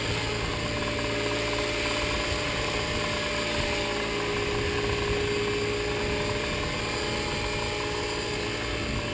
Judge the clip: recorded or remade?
recorded